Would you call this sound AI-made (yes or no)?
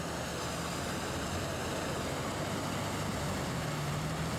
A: no